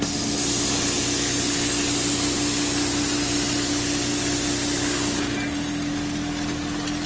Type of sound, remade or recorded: recorded